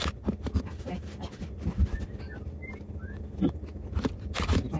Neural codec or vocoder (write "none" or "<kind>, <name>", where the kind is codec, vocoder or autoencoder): none